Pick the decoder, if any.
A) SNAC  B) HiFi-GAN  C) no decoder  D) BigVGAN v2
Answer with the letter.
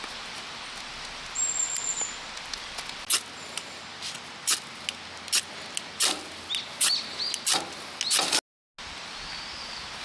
C